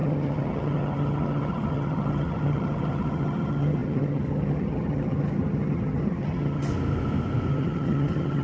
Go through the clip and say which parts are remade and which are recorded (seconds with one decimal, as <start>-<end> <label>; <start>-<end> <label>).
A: 0.0-6.7 remade; 6.7-7.5 recorded; 7.5-8.4 remade